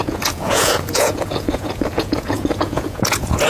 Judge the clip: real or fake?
fake